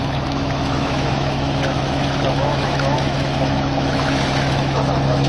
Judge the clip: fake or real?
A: fake